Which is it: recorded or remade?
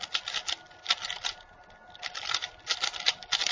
recorded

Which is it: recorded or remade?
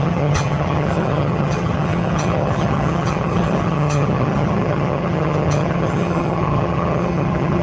remade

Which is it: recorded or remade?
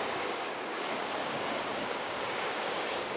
remade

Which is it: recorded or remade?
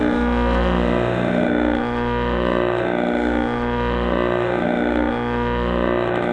remade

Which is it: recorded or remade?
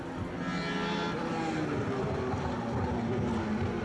recorded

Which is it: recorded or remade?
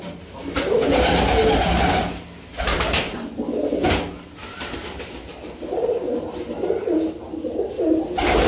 recorded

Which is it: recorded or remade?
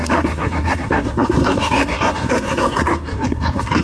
remade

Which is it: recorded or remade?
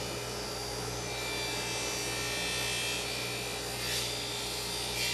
recorded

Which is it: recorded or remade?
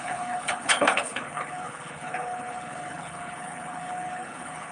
remade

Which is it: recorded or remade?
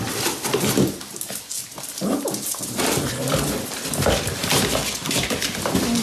recorded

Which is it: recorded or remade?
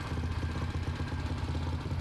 recorded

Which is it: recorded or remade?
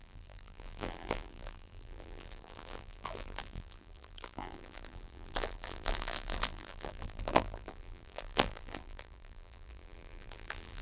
remade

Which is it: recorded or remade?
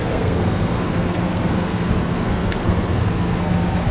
remade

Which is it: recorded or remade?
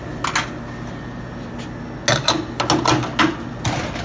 recorded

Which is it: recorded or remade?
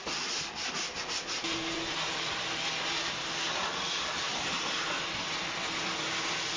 remade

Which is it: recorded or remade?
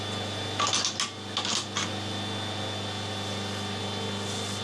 recorded